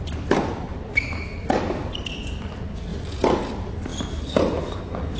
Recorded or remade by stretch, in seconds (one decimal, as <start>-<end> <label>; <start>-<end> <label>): 0.0-5.2 recorded